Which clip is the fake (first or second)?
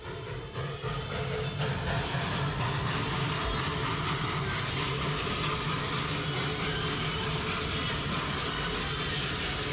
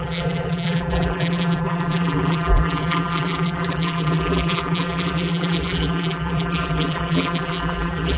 second